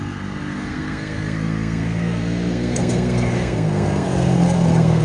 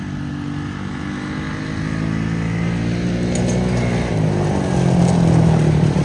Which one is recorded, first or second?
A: second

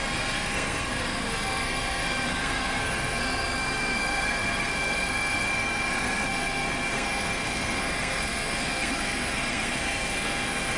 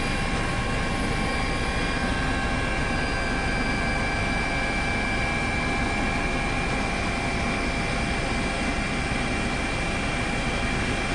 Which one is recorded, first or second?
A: second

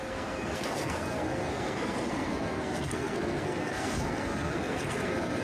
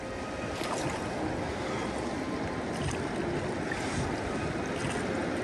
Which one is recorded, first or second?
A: second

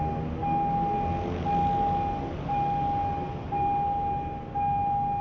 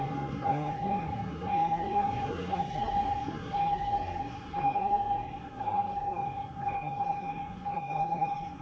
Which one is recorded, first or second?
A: first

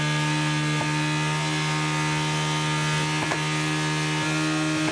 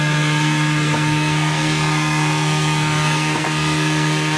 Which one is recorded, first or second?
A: first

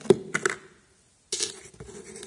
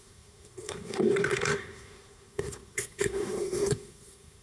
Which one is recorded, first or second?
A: first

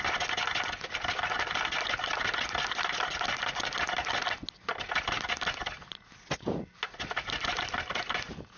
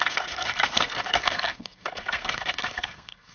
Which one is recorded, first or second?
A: first